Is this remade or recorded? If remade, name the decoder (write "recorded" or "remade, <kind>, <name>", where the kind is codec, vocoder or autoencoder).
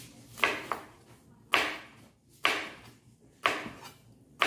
recorded